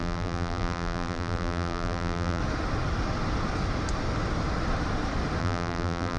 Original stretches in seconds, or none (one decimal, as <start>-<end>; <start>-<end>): 2.4-5.4